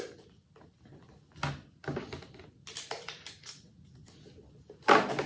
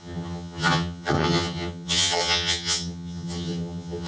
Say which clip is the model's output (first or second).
second